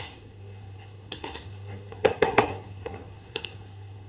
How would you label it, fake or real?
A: fake